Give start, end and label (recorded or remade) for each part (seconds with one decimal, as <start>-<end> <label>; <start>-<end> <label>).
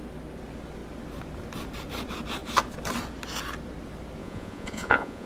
0.0-4.2 recorded; 4.2-5.3 remade